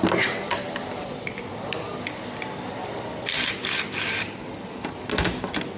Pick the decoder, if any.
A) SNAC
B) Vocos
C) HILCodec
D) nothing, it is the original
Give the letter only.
D